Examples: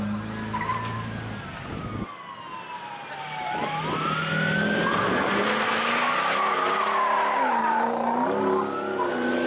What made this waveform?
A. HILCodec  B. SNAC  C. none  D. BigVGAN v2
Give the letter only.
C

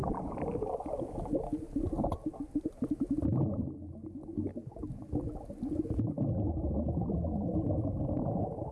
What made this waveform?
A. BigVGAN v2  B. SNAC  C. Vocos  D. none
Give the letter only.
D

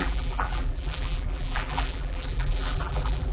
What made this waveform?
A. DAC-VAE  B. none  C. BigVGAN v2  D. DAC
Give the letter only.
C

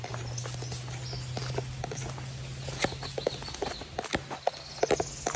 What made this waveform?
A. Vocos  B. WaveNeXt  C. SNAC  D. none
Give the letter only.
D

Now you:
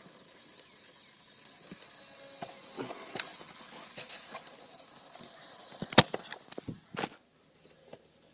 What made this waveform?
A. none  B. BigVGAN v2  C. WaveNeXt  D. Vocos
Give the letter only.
A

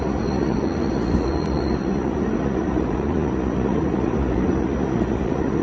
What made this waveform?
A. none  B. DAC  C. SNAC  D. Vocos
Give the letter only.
D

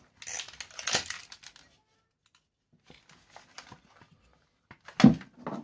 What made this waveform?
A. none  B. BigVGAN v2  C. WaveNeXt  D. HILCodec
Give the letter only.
A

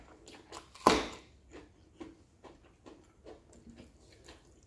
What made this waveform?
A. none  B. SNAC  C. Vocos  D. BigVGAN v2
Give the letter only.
A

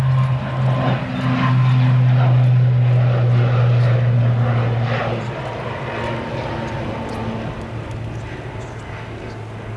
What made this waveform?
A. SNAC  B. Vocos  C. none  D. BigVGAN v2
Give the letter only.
C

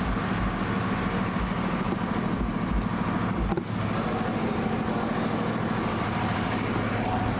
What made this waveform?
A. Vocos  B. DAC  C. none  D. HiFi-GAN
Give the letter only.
C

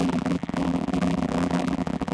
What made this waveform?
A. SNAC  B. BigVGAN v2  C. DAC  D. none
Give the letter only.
B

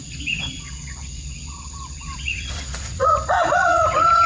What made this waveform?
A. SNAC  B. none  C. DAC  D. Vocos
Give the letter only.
D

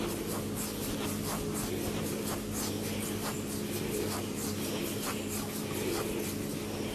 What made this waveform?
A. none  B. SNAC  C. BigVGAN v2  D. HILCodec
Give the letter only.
A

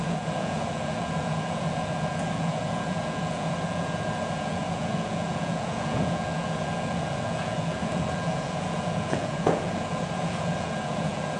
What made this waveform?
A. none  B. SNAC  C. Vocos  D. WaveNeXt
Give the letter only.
C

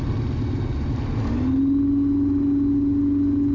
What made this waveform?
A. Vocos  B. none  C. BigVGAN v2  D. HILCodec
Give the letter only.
B